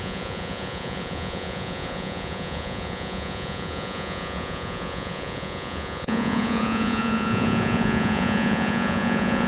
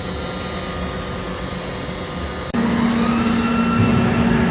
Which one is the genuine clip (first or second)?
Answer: second